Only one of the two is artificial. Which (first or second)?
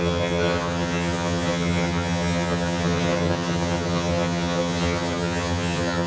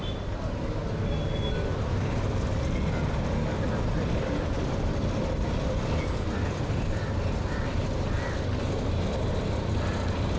first